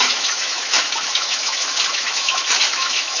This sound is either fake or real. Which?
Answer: fake